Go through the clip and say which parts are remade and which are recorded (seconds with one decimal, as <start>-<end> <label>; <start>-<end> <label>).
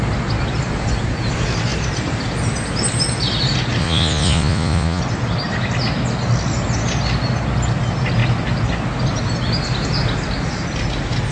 0.0-3.8 recorded; 3.8-5.0 remade; 5.0-11.3 recorded